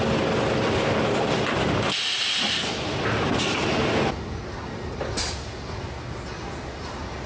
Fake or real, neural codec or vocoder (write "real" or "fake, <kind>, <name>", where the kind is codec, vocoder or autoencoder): real